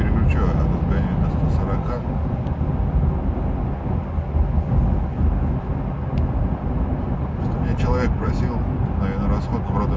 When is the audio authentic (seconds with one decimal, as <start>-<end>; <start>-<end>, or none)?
0.0-6.9; 8.4-10.0